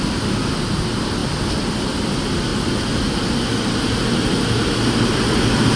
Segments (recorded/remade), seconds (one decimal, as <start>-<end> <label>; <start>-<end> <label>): 0.0-5.8 recorded